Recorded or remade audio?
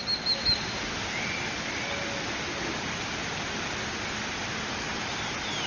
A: recorded